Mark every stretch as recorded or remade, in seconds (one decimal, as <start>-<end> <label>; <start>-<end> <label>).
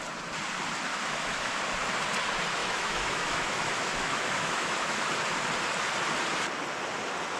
0.0-0.9 recorded; 0.9-1.6 remade; 1.6-2.6 recorded; 2.6-5.1 remade; 5.1-7.4 recorded